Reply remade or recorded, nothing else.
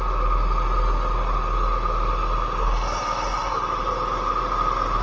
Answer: recorded